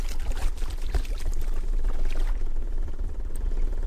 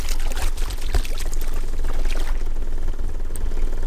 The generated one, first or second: first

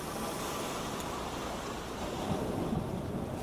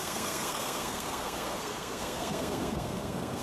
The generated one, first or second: second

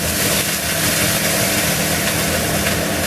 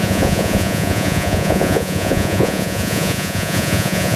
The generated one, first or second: second